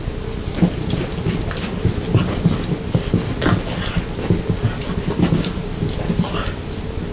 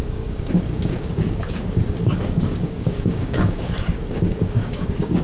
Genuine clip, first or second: first